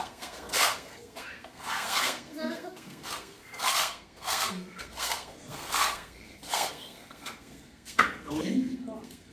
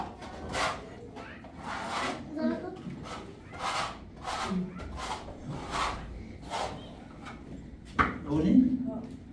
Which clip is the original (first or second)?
second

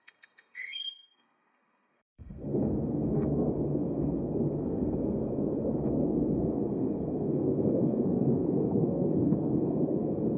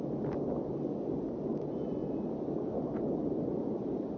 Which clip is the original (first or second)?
second